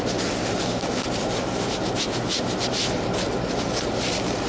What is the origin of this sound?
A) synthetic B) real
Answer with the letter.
B